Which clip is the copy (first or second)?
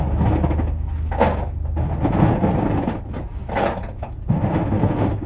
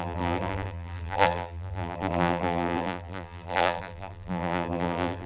second